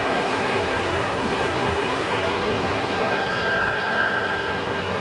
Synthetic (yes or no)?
yes